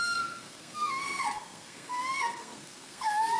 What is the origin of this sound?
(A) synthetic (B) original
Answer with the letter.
A